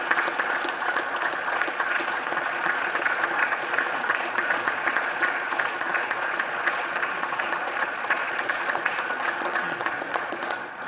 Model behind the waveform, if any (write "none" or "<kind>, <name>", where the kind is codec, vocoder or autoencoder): vocoder, Vocos